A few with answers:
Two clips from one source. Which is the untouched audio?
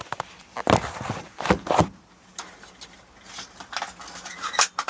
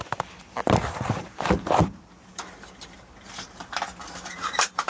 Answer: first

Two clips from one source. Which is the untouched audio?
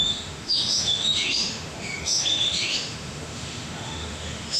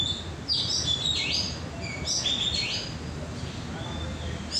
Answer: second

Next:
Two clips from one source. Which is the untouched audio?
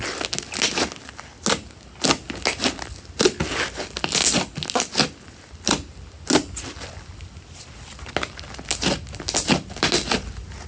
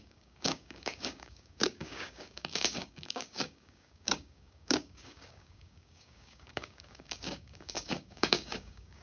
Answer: first